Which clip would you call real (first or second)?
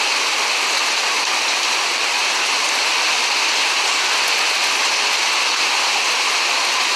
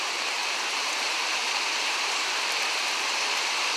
first